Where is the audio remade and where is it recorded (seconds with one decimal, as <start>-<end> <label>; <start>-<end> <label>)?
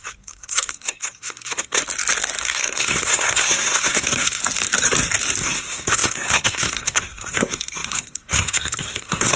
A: 0.0-1.8 remade; 1.8-2.4 recorded; 2.4-4.4 remade; 4.4-5.4 recorded; 5.4-9.4 remade